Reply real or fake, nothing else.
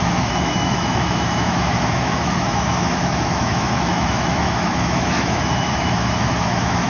fake